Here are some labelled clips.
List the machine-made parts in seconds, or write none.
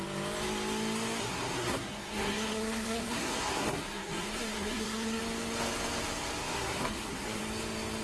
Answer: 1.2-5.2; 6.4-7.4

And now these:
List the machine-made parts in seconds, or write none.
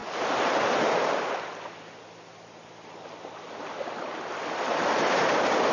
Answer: none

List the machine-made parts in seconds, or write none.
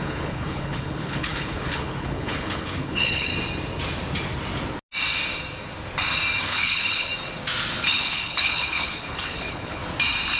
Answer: 0.0-3.3; 6.4-7.1; 7.9-9.8